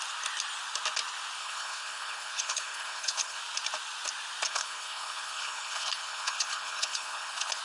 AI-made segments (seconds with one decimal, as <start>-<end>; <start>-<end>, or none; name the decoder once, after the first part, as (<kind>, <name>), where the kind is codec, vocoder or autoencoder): 1.4-3.4 (codec, HILCodec); 4.5-7.6